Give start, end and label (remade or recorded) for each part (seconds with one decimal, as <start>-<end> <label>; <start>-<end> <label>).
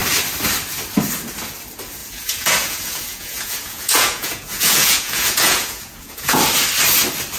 0.0-2.0 recorded; 2.0-6.4 remade; 6.4-7.4 recorded